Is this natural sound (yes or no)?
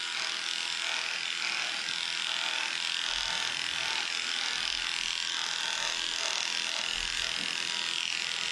yes